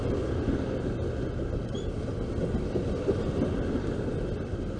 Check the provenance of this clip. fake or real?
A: real